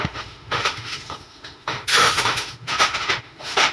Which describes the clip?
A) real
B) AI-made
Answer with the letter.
B